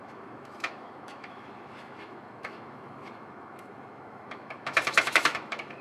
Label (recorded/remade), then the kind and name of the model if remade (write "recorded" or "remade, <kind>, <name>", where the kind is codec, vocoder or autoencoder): remade, autoencoder, DAC-VAE